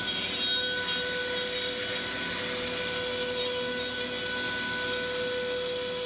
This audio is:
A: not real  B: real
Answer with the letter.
B